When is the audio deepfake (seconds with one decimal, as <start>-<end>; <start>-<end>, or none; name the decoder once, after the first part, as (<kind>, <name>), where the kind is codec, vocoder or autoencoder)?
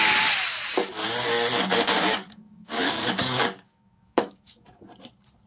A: 1.7-4.9 (codec, DAC)